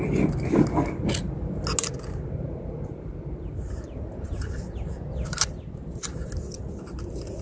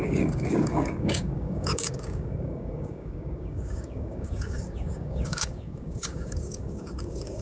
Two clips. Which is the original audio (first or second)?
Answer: first